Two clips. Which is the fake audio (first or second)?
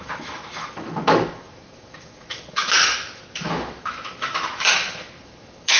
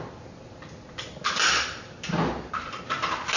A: first